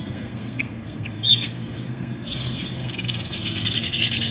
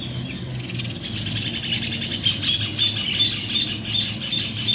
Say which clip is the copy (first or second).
first